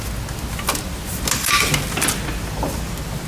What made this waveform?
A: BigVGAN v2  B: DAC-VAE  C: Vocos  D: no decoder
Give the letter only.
D